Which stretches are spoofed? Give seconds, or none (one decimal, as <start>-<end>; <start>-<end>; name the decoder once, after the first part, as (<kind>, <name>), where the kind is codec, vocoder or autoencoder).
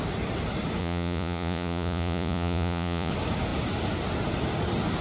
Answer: 0.8-3.1 (vocoder, Vocos)